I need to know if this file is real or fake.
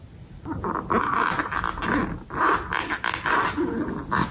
real